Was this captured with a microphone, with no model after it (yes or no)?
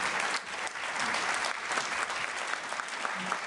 yes